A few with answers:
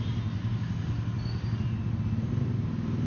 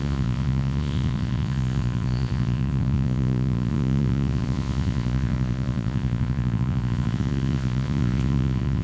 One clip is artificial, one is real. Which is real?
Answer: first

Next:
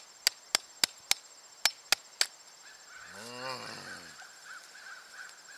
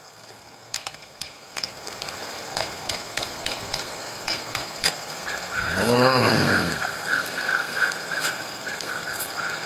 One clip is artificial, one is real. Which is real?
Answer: first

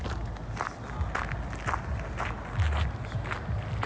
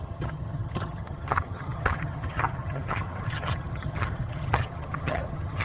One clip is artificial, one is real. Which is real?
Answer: first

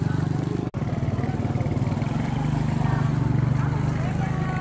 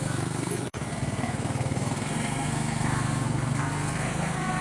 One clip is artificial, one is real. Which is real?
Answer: first